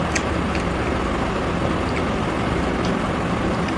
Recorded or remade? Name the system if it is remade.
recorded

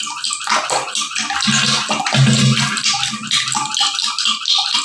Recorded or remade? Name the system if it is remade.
recorded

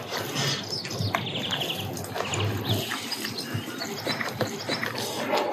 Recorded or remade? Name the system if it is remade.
recorded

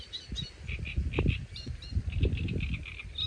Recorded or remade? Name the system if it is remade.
recorded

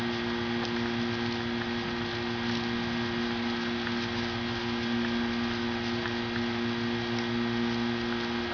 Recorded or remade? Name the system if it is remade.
recorded